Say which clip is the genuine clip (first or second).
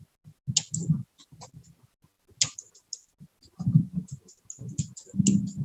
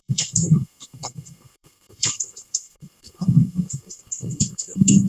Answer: first